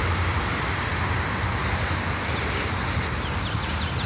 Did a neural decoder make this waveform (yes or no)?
no